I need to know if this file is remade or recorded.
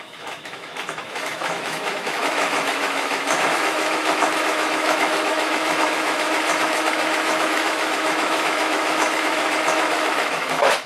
remade